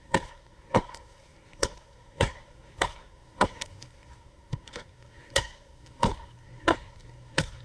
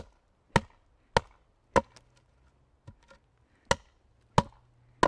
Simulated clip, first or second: first